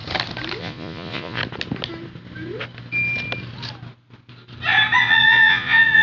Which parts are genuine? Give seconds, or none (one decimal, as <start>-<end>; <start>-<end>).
0.0-0.6; 1.4-5.0